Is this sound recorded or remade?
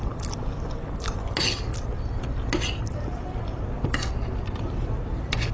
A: recorded